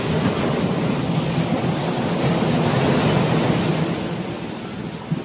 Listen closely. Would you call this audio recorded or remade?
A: recorded